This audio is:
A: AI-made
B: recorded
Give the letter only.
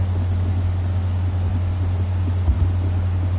B